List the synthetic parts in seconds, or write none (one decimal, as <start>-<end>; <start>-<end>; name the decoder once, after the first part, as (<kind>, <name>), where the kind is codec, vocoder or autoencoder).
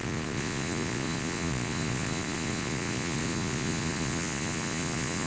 0.0-5.3 (vocoder, Vocos)